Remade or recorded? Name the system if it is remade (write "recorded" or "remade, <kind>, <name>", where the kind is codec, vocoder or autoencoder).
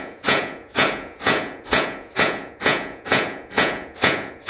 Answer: remade, vocoder, Vocos